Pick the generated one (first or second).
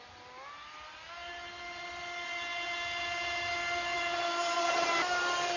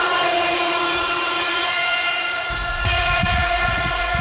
second